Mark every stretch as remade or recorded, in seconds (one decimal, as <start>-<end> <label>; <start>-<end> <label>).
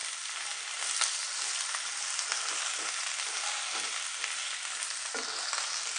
0.0-6.0 recorded